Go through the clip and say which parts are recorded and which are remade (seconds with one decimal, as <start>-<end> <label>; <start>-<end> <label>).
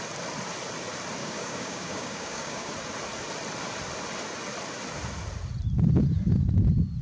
0.0-1.2 recorded; 1.2-2.7 remade; 2.7-7.0 recorded